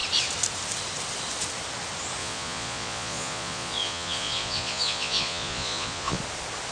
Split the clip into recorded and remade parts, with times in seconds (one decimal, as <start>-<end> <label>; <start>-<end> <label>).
0.0-2.2 recorded; 2.2-6.2 remade; 6.2-6.7 recorded